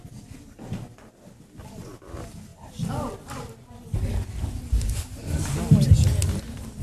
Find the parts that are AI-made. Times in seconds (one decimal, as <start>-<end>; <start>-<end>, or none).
none